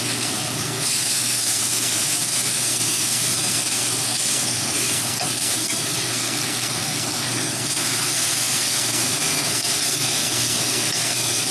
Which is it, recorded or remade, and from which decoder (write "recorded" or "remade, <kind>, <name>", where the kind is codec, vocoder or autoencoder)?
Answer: remade, codec, SNAC